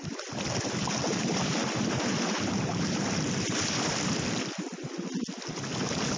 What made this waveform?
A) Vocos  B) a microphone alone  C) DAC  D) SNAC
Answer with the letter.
B